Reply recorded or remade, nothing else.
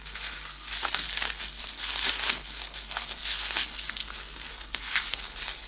remade